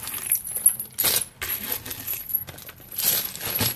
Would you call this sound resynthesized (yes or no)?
no